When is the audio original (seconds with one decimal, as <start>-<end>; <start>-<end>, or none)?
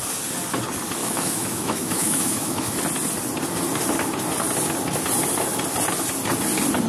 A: 0.0-1.0; 2.8-6.9